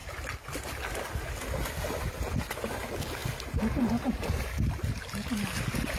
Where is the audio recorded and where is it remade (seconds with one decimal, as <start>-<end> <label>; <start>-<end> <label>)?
0.0-6.0 recorded